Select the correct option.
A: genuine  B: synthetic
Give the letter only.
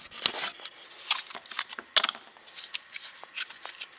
A